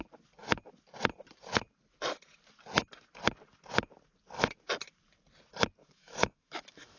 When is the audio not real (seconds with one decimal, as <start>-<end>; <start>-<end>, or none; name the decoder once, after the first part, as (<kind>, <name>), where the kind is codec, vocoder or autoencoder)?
5.8-7.0 (autoencoder, DAC-VAE)